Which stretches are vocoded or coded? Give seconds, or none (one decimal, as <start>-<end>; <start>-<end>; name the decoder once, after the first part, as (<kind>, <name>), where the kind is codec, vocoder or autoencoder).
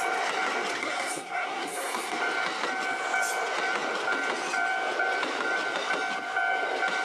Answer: 0.8-2.2 (codec, SNAC)